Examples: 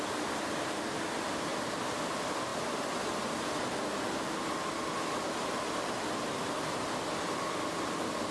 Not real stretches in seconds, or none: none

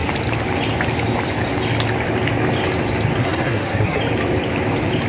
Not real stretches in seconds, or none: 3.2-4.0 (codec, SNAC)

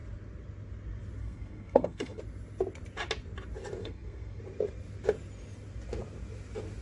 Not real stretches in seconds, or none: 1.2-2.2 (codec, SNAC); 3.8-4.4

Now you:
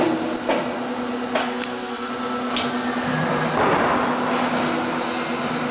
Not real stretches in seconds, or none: 1.4-2.1 (codec, SNAC)

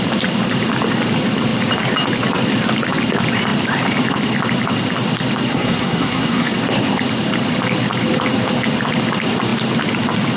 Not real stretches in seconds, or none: 5.5-6.5 (codec, SNAC)

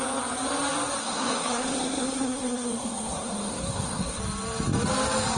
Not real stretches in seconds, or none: 1.0-4.2 (codec, SNAC)

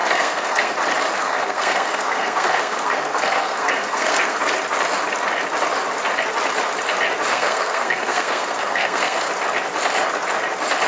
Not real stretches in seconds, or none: 0.0-0.7 (codec, SNAC); 1.2-4.4; 7.3-9.3

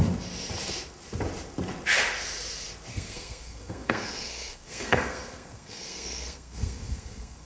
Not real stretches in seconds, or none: 2.9-7.5 (codec, SNAC)